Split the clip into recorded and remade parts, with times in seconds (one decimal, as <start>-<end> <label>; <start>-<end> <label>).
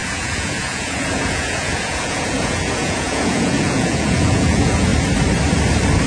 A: 0.0-4.9 remade; 4.9-6.1 recorded